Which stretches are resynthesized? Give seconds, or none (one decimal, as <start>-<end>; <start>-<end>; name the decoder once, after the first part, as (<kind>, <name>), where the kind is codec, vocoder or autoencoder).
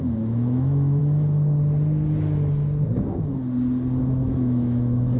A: 0.0-1.0 (autoencoder, DAC-VAE); 4.0-5.2